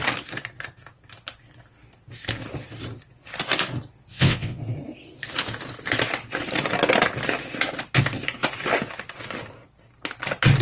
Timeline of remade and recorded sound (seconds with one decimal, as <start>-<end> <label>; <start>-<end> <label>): 0.0-4.1 recorded; 4.1-4.6 remade; 4.6-10.6 recorded